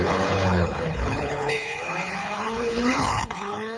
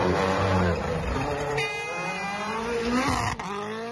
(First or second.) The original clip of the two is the second